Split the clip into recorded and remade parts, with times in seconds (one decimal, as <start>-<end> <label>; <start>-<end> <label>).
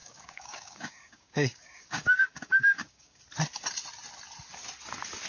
0.0-3.2 remade; 3.2-5.3 recorded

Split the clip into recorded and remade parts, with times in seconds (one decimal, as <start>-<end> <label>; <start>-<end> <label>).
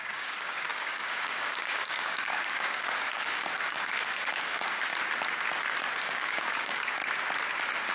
0.0-4.9 remade; 4.9-5.9 recorded; 5.9-7.0 remade; 7.0-7.9 recorded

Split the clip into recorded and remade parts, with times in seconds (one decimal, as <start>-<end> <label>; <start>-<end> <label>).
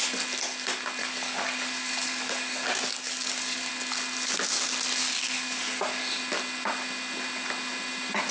0.0-1.0 recorded; 1.0-3.7 remade; 3.7-5.0 recorded; 5.0-6.2 remade; 6.2-8.3 recorded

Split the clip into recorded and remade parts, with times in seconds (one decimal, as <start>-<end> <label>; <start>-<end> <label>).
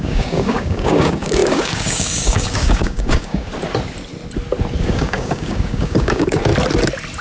0.0-3.5 remade; 3.5-4.8 recorded; 4.8-6.5 remade; 6.5-7.2 recorded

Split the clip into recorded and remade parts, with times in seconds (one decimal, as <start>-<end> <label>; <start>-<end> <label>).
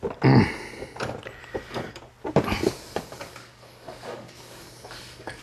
0.0-1.4 recorded; 1.4-2.0 remade; 2.0-2.6 recorded; 2.6-5.4 remade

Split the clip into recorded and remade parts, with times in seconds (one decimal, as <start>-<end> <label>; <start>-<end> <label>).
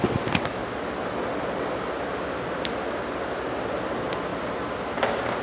0.0-5.4 recorded